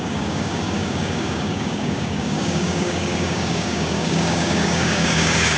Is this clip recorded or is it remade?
remade